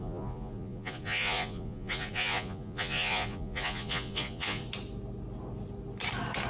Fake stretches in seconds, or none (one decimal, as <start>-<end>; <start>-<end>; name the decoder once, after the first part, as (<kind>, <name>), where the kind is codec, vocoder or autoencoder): 0.0-4.6 (vocoder, Vocos)